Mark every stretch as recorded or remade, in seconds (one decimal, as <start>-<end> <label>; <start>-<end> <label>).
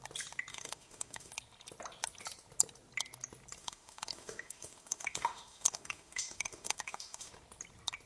0.0-0.5 recorded; 0.5-1.3 remade; 1.3-3.6 recorded; 3.6-7.3 remade; 7.3-8.1 recorded